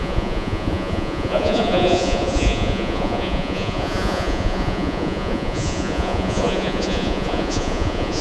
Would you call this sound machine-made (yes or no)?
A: yes